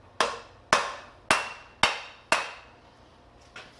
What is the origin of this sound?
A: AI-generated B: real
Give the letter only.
B